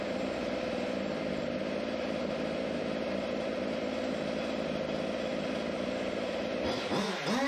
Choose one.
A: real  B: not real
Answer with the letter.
A